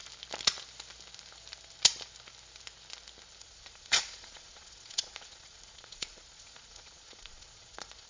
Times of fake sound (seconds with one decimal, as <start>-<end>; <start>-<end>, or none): 3.4-8.1